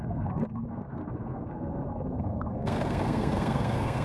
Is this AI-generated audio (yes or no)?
yes